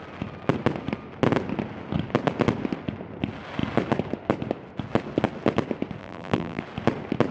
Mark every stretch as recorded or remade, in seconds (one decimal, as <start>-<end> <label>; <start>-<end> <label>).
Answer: 0.0-6.0 recorded; 6.0-6.6 remade; 6.6-7.3 recorded